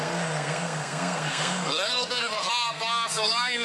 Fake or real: fake